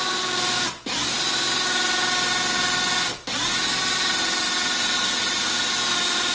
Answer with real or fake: real